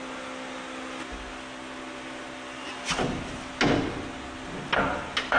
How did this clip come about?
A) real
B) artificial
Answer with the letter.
A